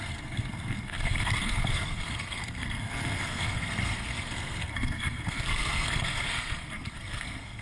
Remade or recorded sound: remade